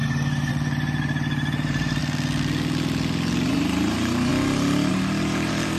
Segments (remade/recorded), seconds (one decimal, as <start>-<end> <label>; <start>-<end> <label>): 0.0-2.0 remade; 2.0-3.5 recorded; 3.5-4.3 remade; 4.3-4.9 recorded; 4.9-5.8 remade